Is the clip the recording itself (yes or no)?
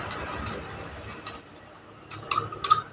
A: yes